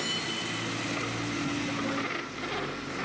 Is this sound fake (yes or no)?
no